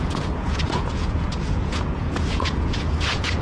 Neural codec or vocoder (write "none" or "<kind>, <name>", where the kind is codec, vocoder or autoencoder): vocoder, Vocos